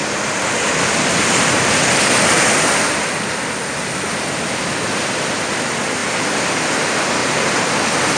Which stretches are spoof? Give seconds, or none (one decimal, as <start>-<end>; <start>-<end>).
7.2-7.7